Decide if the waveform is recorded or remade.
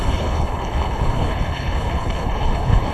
remade